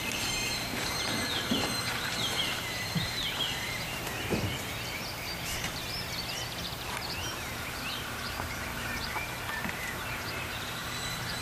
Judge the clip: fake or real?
fake